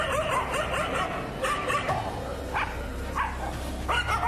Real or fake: real